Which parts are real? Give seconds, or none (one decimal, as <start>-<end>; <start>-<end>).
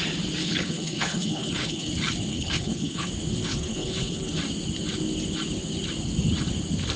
0.0-0.4; 1.9-2.3; 3.1-3.5; 4.4-7.0